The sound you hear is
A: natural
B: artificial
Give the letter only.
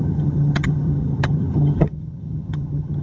B